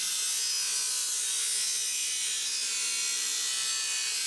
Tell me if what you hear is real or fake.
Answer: real